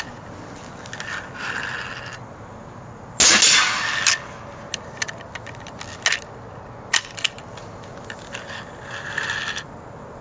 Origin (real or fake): real